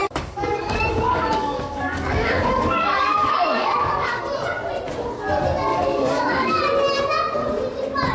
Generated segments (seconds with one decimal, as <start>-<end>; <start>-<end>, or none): 0.0-4.2; 5.7-6.6